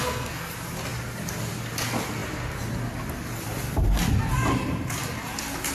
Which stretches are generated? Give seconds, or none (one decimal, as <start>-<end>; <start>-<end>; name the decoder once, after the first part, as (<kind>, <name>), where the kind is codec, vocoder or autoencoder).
0.0-0.5 (codec, SNAC)